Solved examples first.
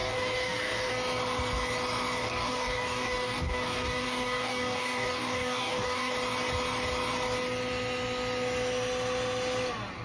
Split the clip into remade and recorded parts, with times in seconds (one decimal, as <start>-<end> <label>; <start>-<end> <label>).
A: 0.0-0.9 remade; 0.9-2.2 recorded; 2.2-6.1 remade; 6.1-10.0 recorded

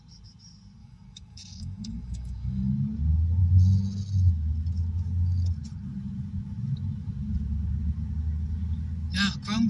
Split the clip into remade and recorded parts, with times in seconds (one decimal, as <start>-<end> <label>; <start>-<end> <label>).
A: 0.0-0.8 recorded; 0.8-2.7 remade; 2.7-9.7 recorded

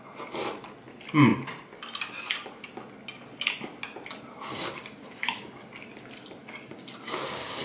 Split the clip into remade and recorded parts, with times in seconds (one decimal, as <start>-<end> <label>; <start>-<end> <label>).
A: 0.0-4.5 recorded; 4.5-5.7 remade; 5.7-6.4 recorded; 6.4-7.6 remade

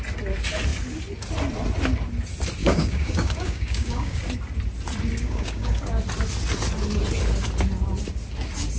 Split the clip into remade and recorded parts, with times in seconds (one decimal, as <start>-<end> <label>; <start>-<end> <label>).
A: 0.0-2.6 recorded; 2.6-4.2 remade; 4.2-5.2 recorded; 5.2-5.8 remade; 5.8-8.8 recorded

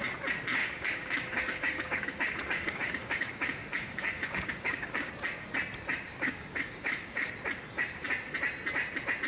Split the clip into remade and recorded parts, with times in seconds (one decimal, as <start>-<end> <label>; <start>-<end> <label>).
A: 0.0-0.6 recorded; 0.6-5.1 remade; 5.1-6.1 recorded; 6.1-7.3 remade; 7.3-9.3 recorded

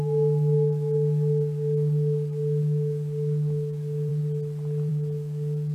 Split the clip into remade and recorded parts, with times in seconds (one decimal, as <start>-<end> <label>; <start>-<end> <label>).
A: 0.0-4.1 remade; 4.1-4.9 recorded; 4.9-5.7 remade